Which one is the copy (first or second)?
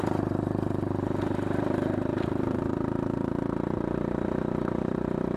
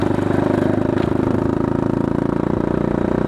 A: first